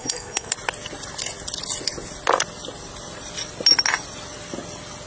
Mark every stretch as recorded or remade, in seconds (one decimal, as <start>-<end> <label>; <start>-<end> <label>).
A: 0.0-0.5 remade; 0.5-5.1 recorded